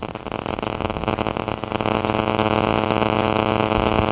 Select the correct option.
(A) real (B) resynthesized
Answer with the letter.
A